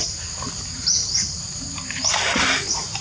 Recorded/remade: recorded